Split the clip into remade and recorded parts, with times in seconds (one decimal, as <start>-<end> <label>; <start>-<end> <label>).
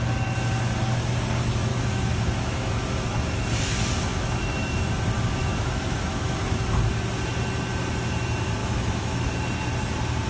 0.0-1.7 recorded; 1.7-3.5 remade; 3.5-4.1 recorded; 4.1-4.8 remade; 4.8-5.4 recorded; 5.4-6.6 remade; 6.6-8.6 recorded; 8.6-9.3 remade; 9.3-10.3 recorded